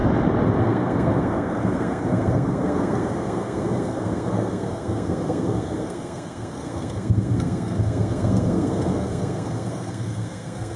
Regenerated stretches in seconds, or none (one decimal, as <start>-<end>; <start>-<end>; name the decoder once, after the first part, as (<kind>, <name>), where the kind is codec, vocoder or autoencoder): 0.6-10.8 (codec, SNAC)